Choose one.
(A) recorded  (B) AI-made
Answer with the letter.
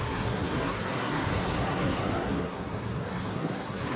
B